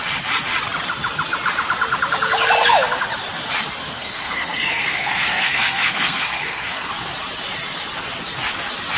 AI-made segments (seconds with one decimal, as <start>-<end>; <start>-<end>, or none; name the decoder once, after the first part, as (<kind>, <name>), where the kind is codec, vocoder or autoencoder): 3.8-6.9 (codec, SNAC)